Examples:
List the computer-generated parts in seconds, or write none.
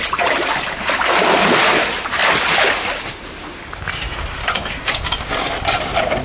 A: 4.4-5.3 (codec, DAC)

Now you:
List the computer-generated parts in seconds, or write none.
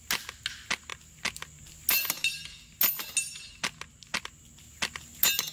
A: none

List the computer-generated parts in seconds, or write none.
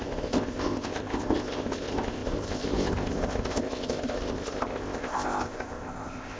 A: 0.0-6.4 (codec, ZipCodec)